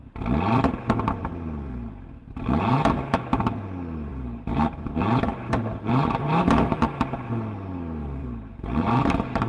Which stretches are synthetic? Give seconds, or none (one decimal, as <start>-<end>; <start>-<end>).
1.2-2.7; 4.1-6.2; 8.2-9.5